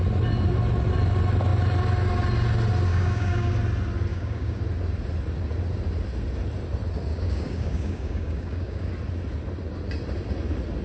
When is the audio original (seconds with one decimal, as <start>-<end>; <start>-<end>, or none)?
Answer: 0.0-2.9; 3.5-4.1; 4.6-7.1; 8.9-10.8